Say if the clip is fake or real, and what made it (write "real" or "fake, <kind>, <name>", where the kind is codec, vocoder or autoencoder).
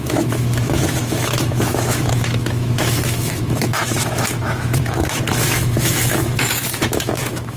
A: fake, autoencoder, DAC-VAE